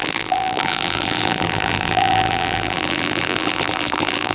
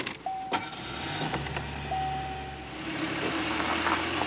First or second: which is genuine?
second